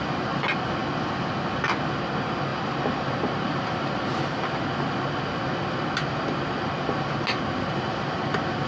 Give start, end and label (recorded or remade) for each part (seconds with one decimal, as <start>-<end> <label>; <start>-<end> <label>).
0.0-8.7 recorded